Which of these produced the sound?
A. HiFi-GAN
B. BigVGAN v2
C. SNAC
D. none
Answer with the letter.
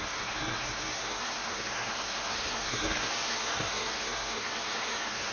C